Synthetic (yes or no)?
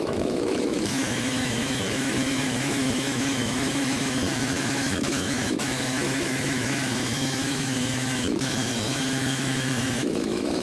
yes